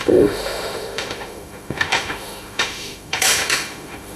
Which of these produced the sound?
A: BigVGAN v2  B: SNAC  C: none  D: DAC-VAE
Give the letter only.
D